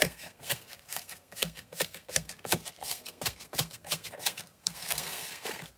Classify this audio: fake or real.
fake